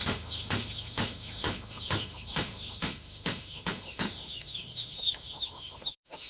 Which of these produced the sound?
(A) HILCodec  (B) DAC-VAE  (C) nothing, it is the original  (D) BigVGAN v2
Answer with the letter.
B